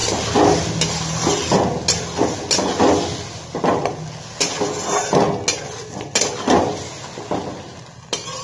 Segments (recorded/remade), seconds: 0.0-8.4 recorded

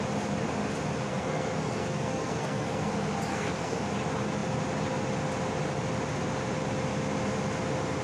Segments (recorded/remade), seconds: 0.0-1.1 recorded; 1.1-2.9 remade; 2.9-3.3 recorded; 3.3-3.8 remade; 3.8-8.0 recorded

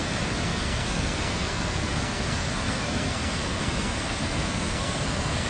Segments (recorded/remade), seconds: 0.0-5.5 remade

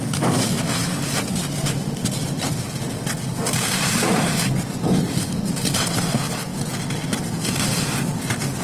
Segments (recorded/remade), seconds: 0.0-8.6 recorded

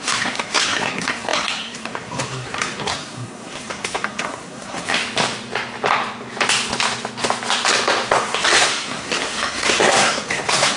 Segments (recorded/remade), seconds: 0.0-5.0 remade; 5.0-8.2 recorded; 8.2-10.8 remade